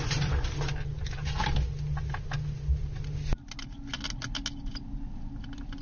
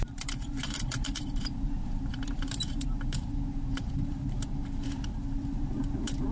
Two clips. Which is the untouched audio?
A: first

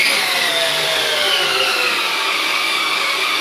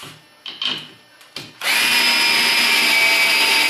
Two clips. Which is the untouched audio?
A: second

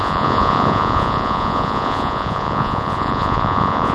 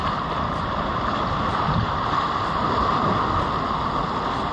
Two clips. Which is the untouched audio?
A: second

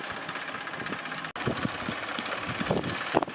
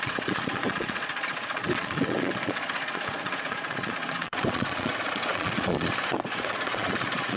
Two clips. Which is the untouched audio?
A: first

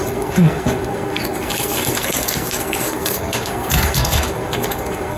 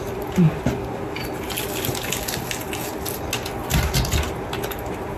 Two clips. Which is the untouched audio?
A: second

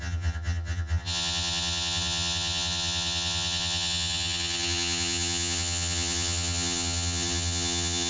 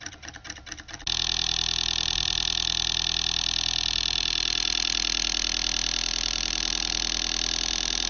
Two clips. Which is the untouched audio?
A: second